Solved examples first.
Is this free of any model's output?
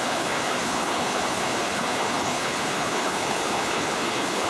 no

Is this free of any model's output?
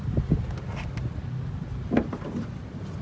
yes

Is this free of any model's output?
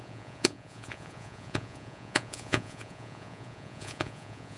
no